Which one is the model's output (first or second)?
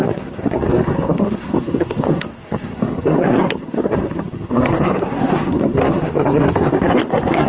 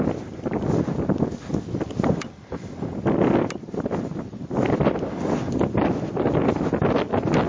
first